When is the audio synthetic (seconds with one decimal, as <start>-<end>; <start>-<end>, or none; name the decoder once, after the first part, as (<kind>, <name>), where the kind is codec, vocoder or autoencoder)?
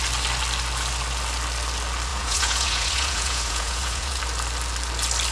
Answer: 2.1-4.2 (vocoder, Vocos)